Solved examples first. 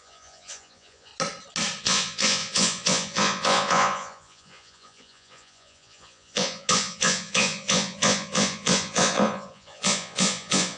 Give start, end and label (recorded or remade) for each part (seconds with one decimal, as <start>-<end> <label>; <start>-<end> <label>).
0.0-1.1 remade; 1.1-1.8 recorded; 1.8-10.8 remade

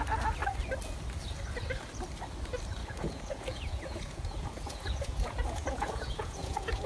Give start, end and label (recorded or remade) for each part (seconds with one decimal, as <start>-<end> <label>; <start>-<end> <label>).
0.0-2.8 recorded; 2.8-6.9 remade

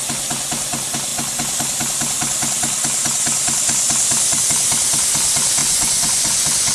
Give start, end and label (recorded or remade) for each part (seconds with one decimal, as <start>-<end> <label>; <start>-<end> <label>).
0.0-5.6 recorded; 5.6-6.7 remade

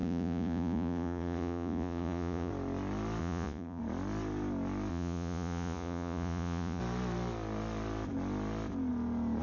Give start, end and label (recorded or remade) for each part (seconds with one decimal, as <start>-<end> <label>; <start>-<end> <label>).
0.0-2.5 remade; 2.5-3.2 recorded; 3.2-3.8 remade; 3.8-4.9 recorded; 4.9-6.8 remade; 6.8-9.4 recorded

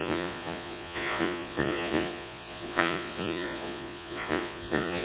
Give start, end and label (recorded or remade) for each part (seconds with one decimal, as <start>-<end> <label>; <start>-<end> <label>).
0.0-5.0 remade

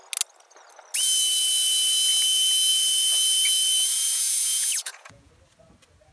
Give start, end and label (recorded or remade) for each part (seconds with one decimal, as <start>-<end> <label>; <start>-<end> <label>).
0.0-3.9 recorded; 3.9-5.3 remade; 5.3-6.1 recorded

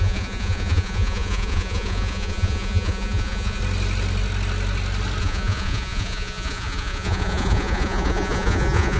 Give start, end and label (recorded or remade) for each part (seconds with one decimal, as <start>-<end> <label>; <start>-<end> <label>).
0.0-3.6 remade; 3.6-5.2 recorded; 5.2-9.0 remade

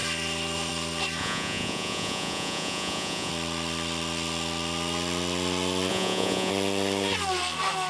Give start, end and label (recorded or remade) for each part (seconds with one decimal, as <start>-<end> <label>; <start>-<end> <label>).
0.0-1.2 recorded; 1.2-3.3 remade; 3.3-5.9 recorded; 5.9-6.5 remade; 6.5-7.9 recorded